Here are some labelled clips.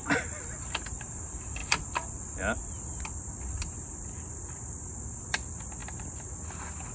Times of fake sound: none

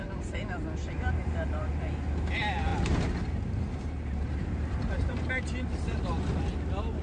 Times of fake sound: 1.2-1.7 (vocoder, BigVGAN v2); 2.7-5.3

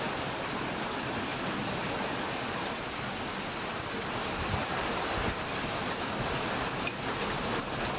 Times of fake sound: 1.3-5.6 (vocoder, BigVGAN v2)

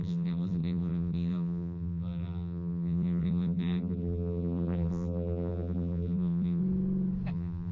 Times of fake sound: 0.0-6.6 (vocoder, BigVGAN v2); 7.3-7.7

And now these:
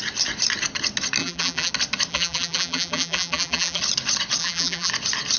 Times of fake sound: 1.2-1.7 (vocoder, BigVGAN v2); 2.1-3.8; 4.4-4.9

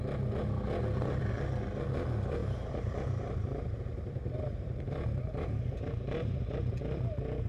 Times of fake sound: 2.4-6.8 (vocoder, BigVGAN v2)

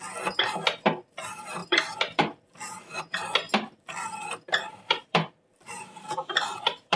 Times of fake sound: 1.6-3.1 (vocoder, BigVGAN v2); 3.5-7.0